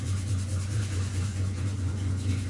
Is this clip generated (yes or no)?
yes